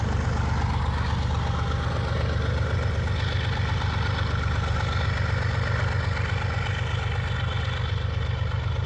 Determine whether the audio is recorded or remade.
recorded